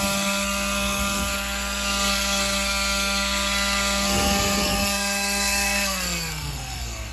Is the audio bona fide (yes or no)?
no